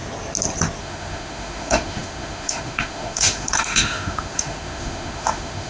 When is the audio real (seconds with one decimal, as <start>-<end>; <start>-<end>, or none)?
0.0-0.8